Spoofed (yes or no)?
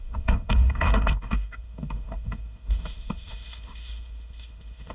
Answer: yes